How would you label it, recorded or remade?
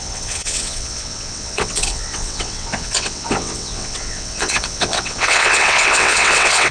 remade